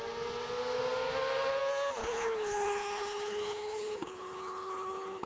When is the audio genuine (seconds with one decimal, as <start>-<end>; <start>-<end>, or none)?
0.0-2.0